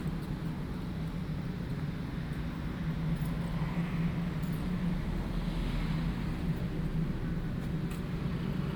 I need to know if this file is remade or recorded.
recorded